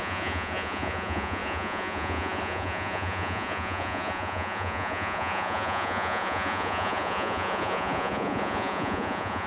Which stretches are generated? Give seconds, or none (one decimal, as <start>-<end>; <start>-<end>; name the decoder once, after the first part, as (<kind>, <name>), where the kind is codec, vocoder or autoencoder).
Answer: 0.0-9.5 (vocoder, Vocos)